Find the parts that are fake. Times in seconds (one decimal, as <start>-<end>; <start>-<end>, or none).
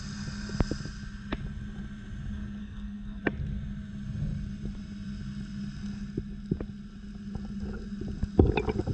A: 2.6-3.2